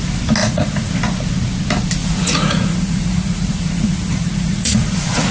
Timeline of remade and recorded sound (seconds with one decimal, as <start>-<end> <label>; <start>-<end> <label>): 0.0-0.4 recorded; 0.4-0.9 remade; 0.9-2.0 recorded; 2.0-5.3 remade